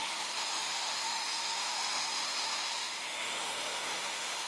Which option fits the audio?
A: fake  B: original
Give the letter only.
A